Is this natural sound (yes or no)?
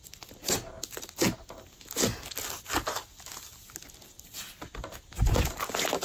yes